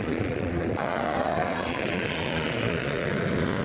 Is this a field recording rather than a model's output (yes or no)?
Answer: no